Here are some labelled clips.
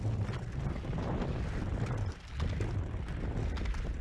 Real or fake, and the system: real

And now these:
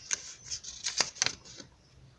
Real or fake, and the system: real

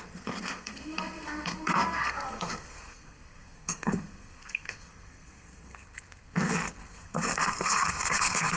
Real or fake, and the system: fake, codec, SNAC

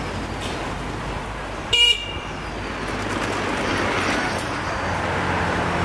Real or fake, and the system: real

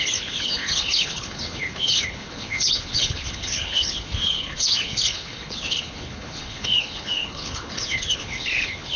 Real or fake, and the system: fake, codec, HILCodec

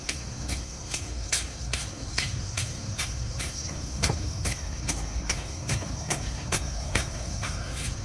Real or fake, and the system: fake, codec, SNAC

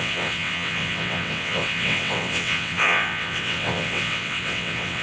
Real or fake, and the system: fake, vocoder, WaveNeXt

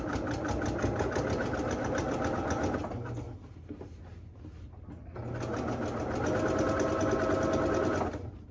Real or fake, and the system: real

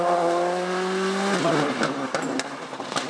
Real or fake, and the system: real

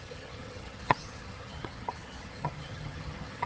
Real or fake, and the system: fake, vocoder, HiFi-GAN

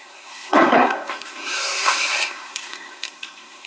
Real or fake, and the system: fake, codec, SNAC